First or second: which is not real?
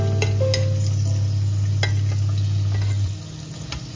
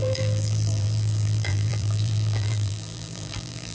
second